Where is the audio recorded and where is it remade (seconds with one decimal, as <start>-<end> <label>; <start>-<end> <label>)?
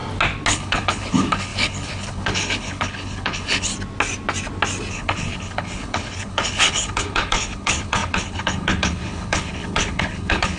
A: 0.0-0.5 recorded; 0.5-3.7 remade; 3.7-4.9 recorded; 4.9-10.6 remade